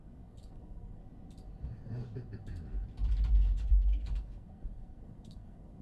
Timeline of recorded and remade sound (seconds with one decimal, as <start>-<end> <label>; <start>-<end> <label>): 0.0-1.0 remade; 1.0-3.3 recorded; 3.3-5.8 remade